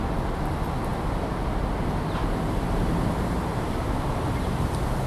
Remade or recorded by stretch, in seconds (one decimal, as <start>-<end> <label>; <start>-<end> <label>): 0.0-3.5 recorded; 3.5-4.3 remade; 4.3-5.1 recorded